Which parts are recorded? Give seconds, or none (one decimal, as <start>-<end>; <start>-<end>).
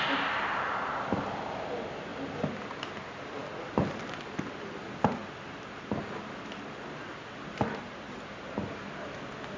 0.0-7.1; 8.5-9.6